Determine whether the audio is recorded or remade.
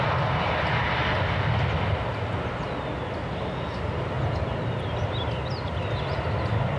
recorded